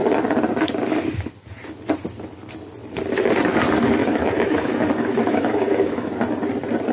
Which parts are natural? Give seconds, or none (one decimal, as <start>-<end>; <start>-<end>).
0.0-4.0; 6.1-6.9